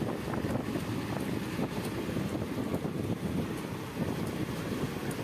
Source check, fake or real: real